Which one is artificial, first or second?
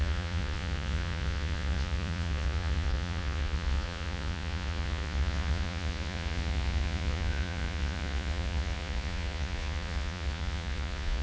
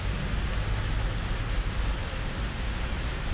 first